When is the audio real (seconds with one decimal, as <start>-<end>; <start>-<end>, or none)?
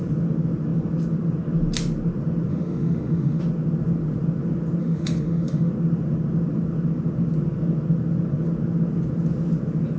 0.0-2.5; 3.4-4.8; 5.7-10.0